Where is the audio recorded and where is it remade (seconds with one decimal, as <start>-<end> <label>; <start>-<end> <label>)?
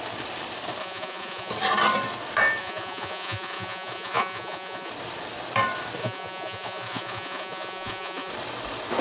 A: 0.0-0.8 recorded; 0.8-1.5 remade; 1.5-2.6 recorded; 2.6-4.9 remade; 4.9-6.0 recorded; 6.0-8.3 remade; 8.3-9.0 recorded